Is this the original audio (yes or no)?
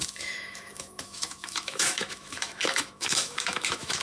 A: no